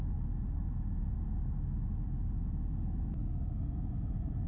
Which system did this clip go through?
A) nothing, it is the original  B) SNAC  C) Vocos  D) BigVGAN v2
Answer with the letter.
A